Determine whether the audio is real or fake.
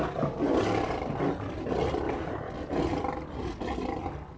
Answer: real